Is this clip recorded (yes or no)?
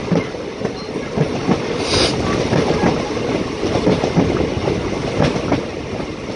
yes